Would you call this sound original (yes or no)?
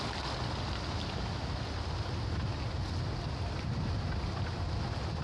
yes